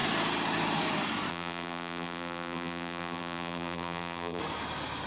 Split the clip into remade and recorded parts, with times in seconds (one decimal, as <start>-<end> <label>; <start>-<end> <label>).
0.0-1.3 recorded; 1.3-4.4 remade; 4.4-5.1 recorded